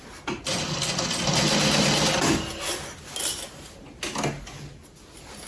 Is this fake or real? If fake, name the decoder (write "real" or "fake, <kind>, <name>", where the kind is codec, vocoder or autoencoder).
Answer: real